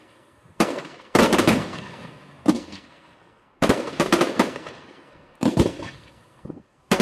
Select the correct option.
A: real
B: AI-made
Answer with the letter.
B